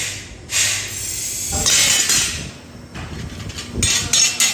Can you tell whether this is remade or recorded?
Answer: recorded